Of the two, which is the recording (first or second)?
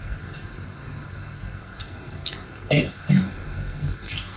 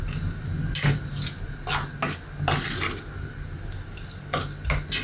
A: second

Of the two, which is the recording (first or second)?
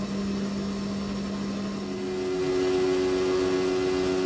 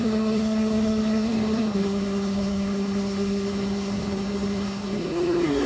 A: first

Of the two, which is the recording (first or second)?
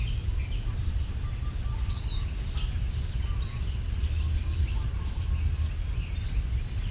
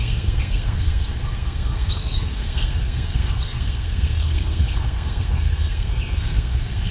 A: first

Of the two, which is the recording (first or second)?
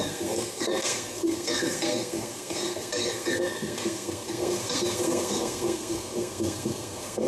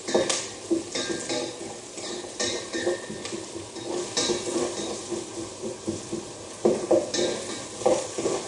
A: second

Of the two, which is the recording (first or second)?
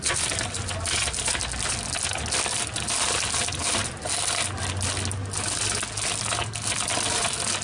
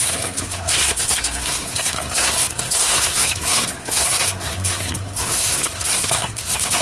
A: first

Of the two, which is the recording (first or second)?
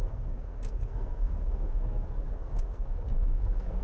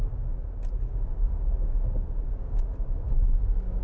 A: second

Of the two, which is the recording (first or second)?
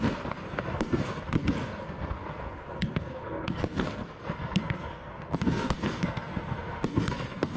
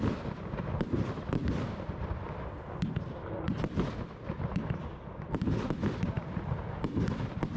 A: second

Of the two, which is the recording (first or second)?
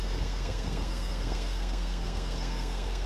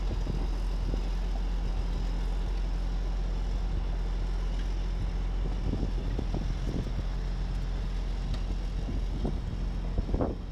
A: second